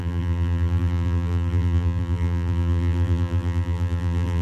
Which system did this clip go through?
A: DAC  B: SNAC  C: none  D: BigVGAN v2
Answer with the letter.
D